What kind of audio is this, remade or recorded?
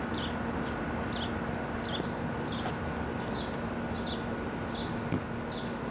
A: recorded